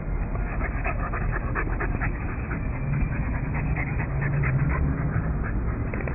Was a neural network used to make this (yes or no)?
no